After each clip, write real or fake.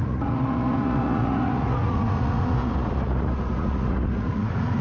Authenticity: fake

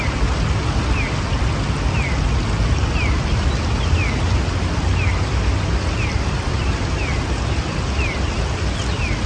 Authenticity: real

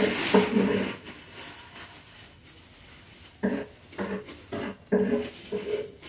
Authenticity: real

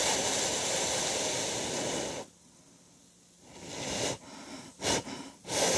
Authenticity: fake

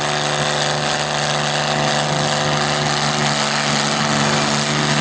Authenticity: real